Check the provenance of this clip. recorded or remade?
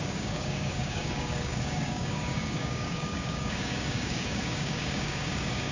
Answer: remade